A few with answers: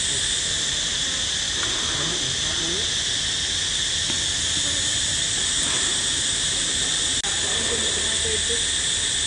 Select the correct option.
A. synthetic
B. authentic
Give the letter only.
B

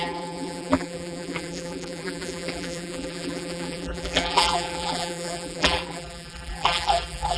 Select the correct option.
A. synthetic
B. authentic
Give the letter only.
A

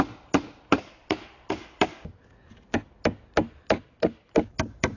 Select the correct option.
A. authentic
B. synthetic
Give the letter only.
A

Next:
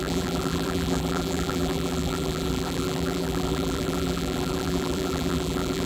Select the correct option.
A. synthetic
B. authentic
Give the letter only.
A